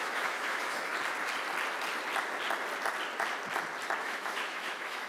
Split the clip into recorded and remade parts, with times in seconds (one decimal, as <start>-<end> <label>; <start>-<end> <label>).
0.0-0.9 remade; 0.9-4.0 recorded; 4.0-5.1 remade